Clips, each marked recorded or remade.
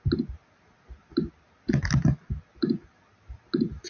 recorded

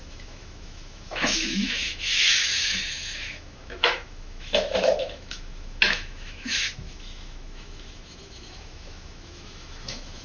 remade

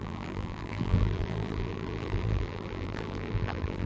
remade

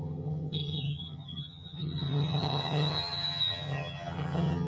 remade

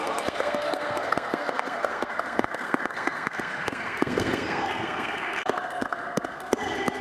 remade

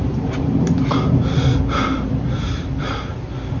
recorded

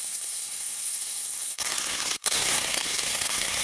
remade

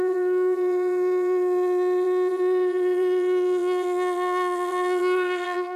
remade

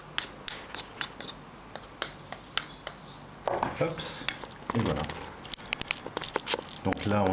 recorded